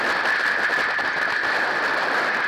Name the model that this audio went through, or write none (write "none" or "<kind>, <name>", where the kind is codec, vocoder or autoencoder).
none